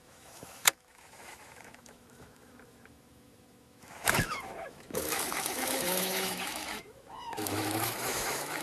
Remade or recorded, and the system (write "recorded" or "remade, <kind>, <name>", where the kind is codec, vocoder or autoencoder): remade, autoencoder, DAC-VAE